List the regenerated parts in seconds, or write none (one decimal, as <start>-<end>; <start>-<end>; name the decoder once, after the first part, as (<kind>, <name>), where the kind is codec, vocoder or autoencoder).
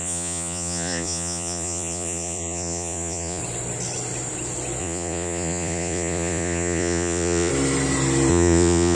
0.0-3.4 (vocoder, Vocos); 4.8-7.5; 8.3-8.9